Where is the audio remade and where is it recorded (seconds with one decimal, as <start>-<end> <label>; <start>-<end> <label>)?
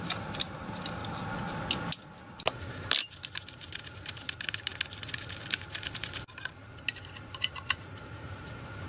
0.0-1.0 remade; 1.0-2.7 recorded; 2.7-4.7 remade; 4.7-7.3 recorded; 7.3-8.9 remade